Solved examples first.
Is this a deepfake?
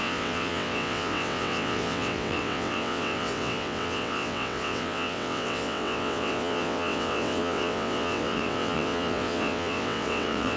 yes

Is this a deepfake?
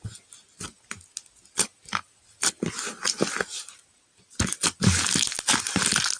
no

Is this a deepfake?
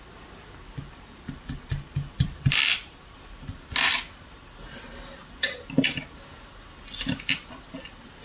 no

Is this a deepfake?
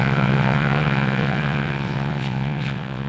yes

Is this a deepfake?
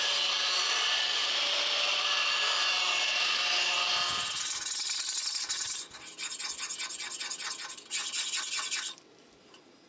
no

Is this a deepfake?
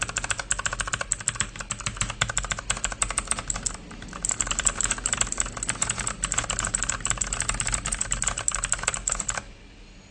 no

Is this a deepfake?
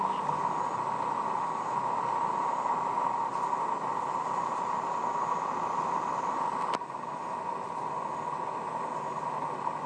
no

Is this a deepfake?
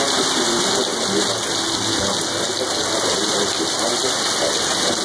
no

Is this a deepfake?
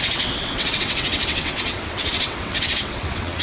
yes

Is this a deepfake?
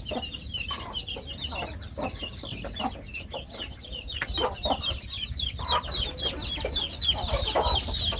no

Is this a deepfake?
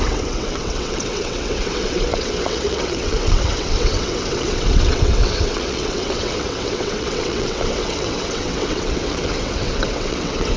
yes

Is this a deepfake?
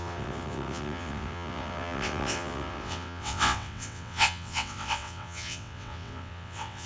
yes